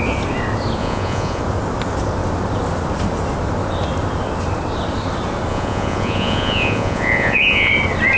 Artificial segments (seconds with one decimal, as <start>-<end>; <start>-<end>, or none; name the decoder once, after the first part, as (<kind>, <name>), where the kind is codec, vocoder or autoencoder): 0.8-1.4 (vocoder, Vocos); 5.5-7.7